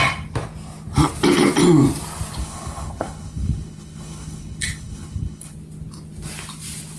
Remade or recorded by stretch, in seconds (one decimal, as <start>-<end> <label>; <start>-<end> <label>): 0.0-2.4 recorded; 2.4-5.5 remade; 5.5-7.0 recorded